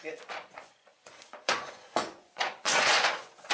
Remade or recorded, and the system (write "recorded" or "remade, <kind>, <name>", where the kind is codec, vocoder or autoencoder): remade, vocoder, Vocos